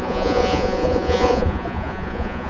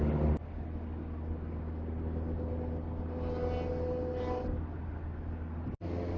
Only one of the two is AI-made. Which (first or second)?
first